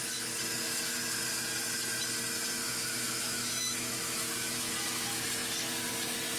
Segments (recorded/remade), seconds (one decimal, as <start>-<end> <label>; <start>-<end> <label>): 0.0-2.6 recorded; 2.6-4.7 remade; 4.7-6.4 recorded